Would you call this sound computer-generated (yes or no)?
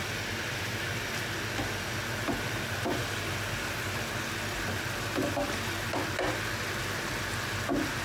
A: no